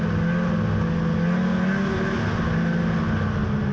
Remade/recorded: recorded